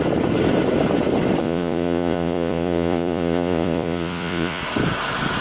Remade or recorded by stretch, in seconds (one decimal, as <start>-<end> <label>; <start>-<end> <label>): 0.0-1.4 recorded; 1.4-4.6 remade; 4.6-5.4 recorded